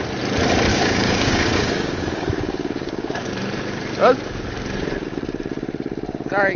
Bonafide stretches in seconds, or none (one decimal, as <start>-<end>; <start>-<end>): 0.0-0.7; 3.3-6.6